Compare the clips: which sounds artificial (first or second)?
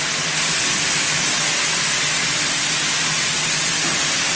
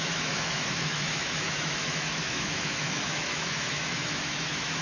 second